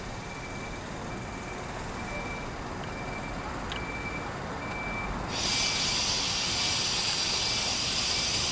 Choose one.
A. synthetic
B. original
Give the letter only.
B